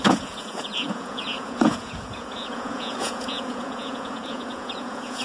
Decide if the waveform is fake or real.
fake